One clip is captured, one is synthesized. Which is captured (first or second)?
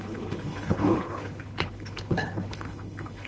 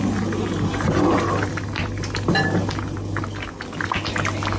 second